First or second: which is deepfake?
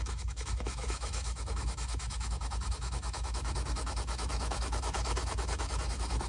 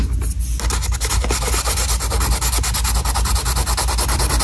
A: first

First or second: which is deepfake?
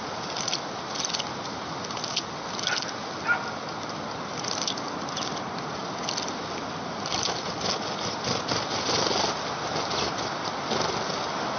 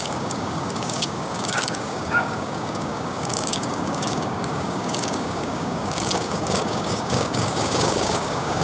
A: second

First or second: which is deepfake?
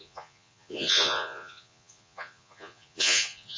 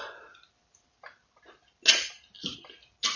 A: first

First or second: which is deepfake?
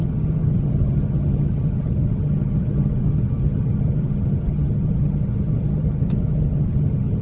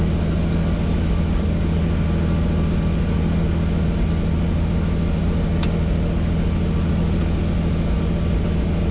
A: first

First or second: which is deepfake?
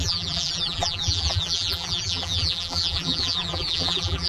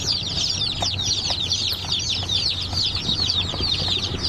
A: first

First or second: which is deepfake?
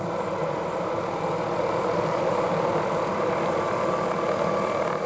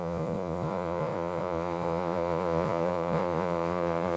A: second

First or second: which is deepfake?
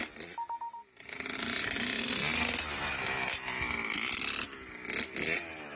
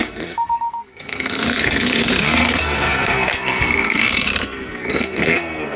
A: second